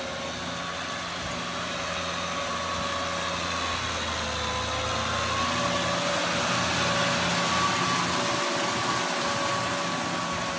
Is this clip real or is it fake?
real